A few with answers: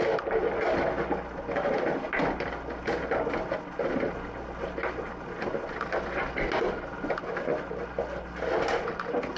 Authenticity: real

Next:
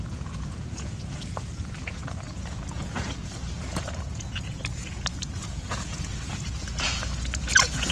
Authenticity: fake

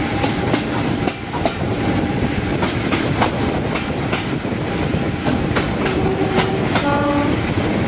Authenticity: real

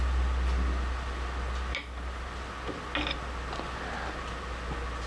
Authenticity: real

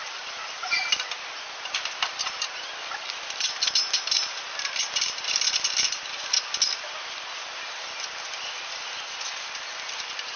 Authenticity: real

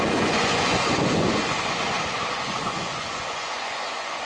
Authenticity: fake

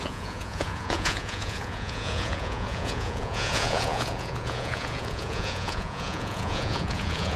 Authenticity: fake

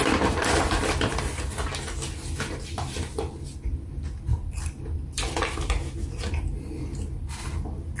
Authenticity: real